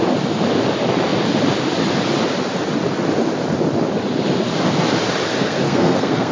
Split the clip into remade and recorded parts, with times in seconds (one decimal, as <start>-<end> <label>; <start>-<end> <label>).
0.0-5.3 recorded; 5.3-6.3 remade